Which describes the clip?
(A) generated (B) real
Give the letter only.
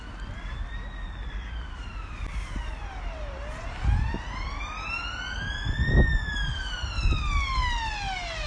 B